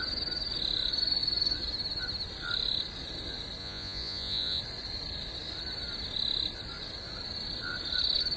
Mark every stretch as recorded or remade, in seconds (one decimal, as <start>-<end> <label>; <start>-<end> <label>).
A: 0.0-3.6 recorded; 3.6-4.6 remade; 4.6-8.4 recorded